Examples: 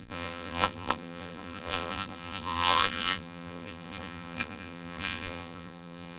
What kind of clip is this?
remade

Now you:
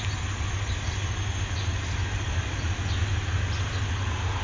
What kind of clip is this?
recorded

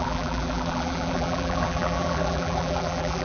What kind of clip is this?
remade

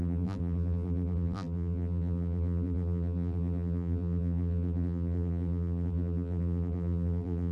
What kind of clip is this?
remade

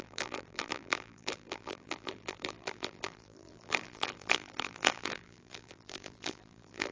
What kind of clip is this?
remade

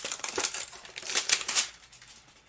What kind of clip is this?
remade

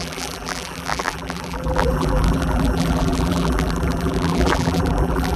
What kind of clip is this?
remade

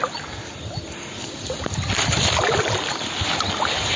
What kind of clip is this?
recorded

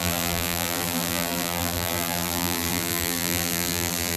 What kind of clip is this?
remade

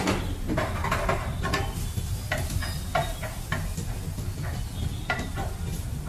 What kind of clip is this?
recorded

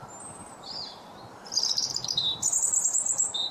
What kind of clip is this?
remade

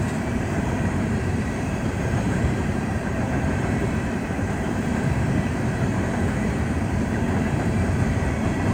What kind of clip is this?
remade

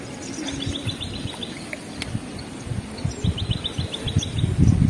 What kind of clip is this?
recorded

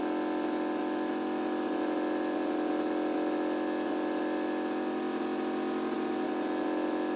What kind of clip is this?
recorded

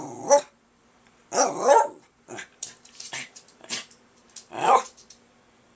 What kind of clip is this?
remade